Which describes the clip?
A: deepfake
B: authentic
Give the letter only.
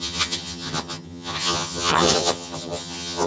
A